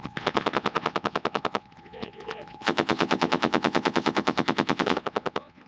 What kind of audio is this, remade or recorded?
remade